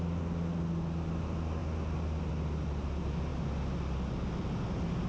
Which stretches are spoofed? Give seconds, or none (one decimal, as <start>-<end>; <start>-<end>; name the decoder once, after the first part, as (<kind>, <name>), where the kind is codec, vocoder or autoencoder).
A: none